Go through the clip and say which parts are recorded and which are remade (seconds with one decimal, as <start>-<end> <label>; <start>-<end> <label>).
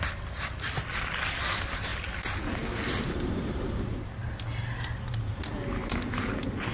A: 0.0-6.7 recorded